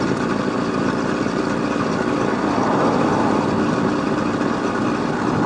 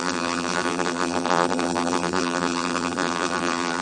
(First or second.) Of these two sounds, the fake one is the second